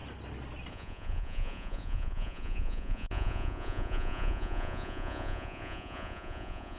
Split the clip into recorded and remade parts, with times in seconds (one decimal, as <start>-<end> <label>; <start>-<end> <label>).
0.0-0.7 recorded; 0.7-6.8 remade